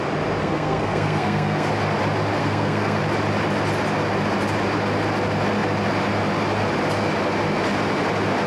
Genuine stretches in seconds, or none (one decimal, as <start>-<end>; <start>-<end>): 0.0-0.4; 1.7-2.4; 3.0-8.5